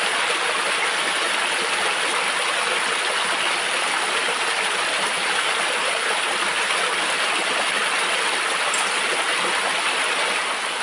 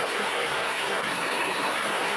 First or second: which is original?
first